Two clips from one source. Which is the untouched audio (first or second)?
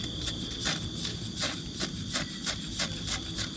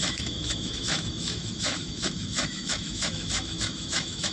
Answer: first